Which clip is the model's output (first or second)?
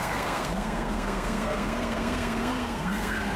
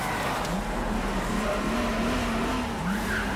first